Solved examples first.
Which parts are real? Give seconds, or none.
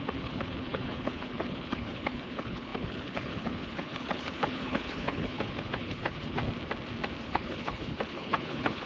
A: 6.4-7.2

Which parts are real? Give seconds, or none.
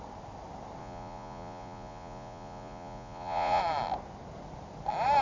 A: 0.0-0.8; 3.6-5.2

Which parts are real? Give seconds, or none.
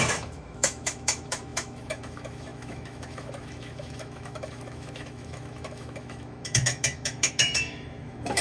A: none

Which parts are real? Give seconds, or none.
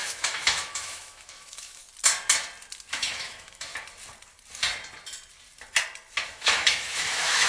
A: 1.8-2.9; 3.7-6.3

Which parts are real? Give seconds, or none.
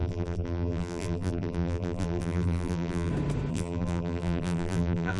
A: 3.1-3.5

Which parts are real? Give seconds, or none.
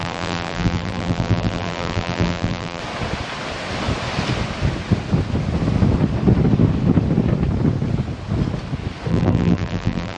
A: 2.8-9.1